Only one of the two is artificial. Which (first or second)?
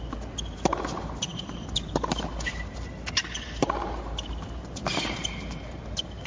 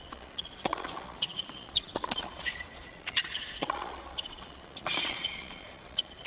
second